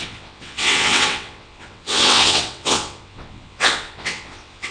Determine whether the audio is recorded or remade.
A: remade